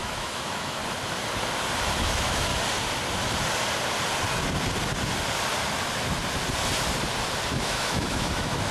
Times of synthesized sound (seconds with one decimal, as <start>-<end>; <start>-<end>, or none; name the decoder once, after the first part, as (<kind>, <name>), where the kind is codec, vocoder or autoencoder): 0.0-0.8 (autoencoder, DAC-VAE); 2.0-2.5; 7.5-8.7